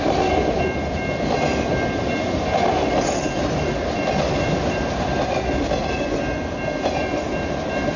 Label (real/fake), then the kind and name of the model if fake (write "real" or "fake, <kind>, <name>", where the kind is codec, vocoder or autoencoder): real